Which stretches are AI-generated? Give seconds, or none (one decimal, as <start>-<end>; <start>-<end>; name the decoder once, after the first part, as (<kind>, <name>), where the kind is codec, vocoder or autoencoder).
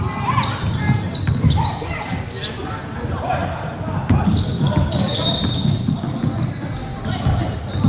3.4-5.6 (vocoder, BigVGAN v2); 6.9-7.4